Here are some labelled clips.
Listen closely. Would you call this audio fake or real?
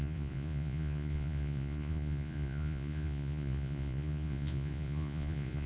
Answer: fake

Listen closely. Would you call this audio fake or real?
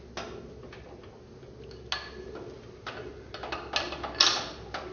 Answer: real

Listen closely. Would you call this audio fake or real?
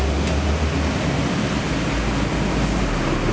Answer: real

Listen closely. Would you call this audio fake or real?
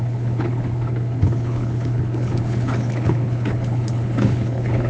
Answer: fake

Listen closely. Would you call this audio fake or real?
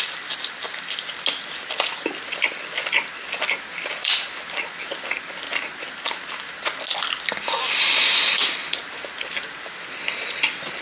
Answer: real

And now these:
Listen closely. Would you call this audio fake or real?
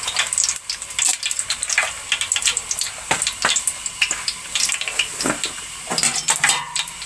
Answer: real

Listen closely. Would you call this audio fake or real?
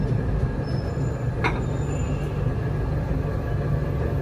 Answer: real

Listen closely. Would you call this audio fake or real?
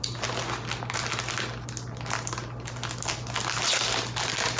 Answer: real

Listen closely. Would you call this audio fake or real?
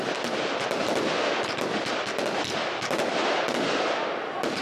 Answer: real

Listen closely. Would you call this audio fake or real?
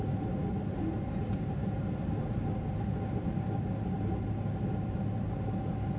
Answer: real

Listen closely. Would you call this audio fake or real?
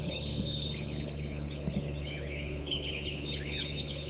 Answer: fake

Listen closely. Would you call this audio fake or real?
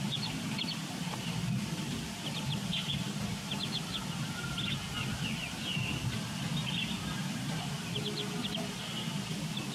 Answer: real